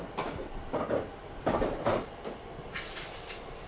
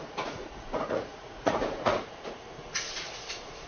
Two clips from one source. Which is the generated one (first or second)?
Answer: second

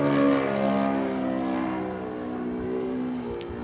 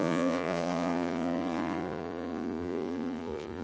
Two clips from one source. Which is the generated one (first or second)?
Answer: second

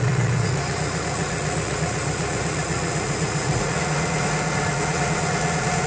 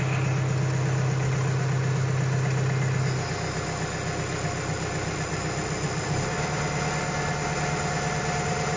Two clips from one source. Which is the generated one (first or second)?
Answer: first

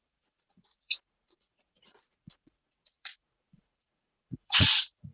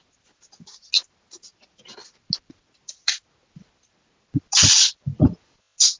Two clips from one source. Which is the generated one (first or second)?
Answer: first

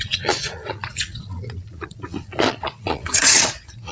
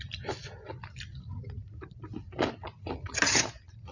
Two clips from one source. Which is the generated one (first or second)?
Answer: first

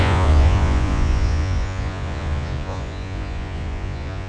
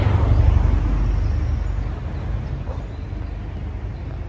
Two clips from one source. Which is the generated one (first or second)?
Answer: first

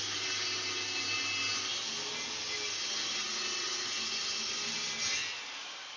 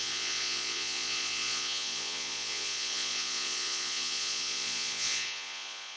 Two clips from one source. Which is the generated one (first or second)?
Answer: second